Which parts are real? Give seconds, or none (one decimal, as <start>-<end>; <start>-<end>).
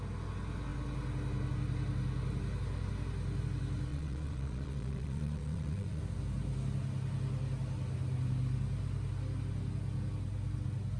0.0-3.9; 6.0-11.0